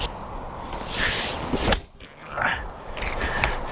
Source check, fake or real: real